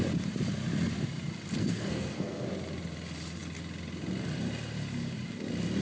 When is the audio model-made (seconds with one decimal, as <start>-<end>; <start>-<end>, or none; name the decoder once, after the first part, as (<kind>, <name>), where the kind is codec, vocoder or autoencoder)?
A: 1.6-2.5 (codec, SNAC)